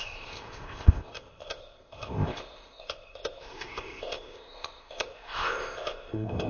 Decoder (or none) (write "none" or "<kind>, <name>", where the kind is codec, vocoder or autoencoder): codec, ZipCodec